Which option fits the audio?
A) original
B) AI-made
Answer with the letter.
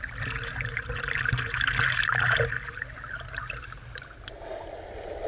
A